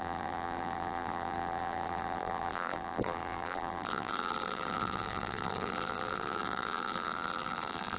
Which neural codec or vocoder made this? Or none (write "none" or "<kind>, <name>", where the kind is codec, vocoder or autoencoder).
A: vocoder, BigVGAN v2